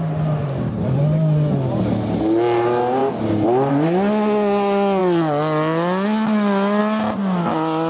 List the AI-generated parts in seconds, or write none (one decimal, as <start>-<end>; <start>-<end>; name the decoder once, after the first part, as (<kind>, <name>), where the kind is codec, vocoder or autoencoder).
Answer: none